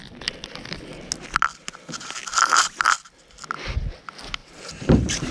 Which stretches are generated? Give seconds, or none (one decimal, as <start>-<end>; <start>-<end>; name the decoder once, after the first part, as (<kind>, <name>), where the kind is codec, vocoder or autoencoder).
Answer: 4.4-5.3 (vocoder, BigVGAN v2)